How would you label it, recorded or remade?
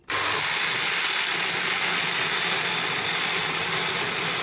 recorded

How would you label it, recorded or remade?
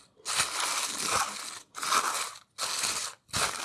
recorded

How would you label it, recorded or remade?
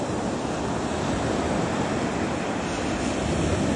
recorded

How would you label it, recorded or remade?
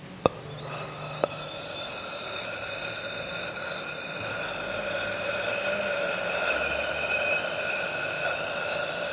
recorded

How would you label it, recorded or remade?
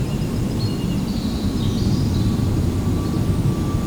recorded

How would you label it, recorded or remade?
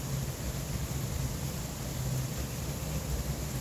recorded